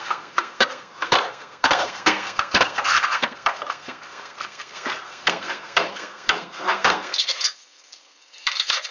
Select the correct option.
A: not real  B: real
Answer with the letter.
A